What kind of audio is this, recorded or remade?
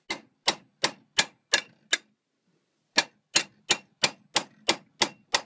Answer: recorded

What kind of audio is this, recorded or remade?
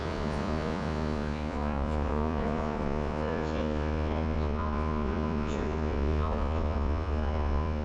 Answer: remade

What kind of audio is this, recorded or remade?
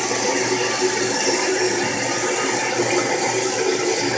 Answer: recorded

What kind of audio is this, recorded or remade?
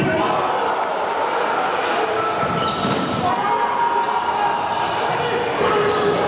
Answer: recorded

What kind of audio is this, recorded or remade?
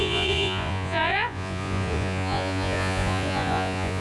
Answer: remade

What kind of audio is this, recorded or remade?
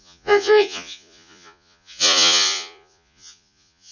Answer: remade